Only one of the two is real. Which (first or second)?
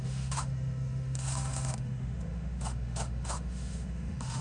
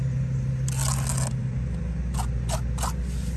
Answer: second